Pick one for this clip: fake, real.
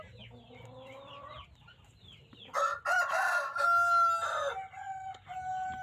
real